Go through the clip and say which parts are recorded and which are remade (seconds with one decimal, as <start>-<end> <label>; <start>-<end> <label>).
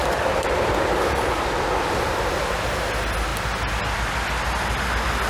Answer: 0.0-2.4 remade; 2.4-5.3 recorded